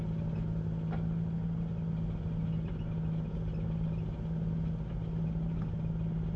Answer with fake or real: real